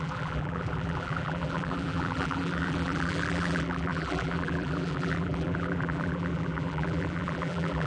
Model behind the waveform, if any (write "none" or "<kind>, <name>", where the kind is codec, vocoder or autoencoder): vocoder, BigVGAN v2